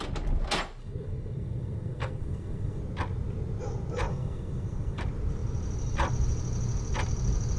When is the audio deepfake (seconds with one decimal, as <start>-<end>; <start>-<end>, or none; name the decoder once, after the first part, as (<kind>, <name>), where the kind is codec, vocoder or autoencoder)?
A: 0.8-2.8 (codec, SNAC); 4.1-5.0